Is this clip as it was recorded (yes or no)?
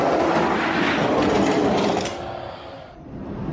yes